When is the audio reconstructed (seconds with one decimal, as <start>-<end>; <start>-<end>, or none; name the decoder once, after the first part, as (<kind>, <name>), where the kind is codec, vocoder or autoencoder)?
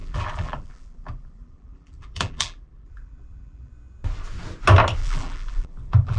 0.0-3.7 (vocoder, BigVGAN v2); 5.0-6.2